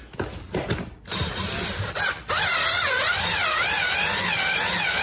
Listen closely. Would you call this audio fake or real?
real